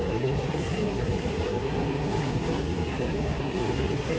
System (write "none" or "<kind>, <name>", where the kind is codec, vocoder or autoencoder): codec, SNAC